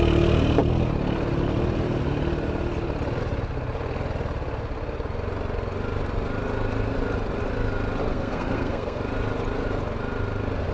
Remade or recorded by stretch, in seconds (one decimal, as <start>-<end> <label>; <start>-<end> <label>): 0.0-8.1 recorded; 8.1-9.0 remade; 9.0-10.7 recorded

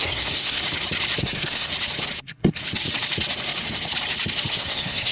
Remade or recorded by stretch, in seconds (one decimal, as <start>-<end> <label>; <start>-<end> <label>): 0.0-0.6 remade; 0.6-1.2 recorded; 1.2-1.7 remade; 1.7-2.2 recorded; 2.2-2.6 remade; 2.6-4.5 recorded; 4.5-5.1 remade